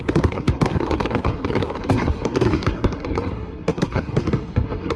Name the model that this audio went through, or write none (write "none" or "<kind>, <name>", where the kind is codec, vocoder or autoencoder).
codec, SNAC